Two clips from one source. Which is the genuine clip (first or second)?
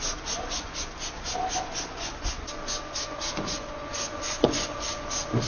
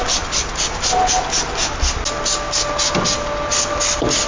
second